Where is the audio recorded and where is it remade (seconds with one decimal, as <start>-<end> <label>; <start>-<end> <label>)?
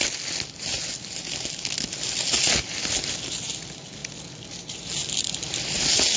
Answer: 0.0-6.2 recorded